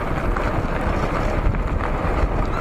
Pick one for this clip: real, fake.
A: real